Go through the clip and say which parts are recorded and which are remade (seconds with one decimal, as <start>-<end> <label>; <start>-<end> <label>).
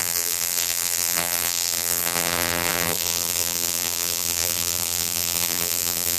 0.0-6.2 remade